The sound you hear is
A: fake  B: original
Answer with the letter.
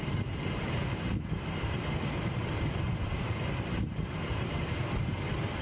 A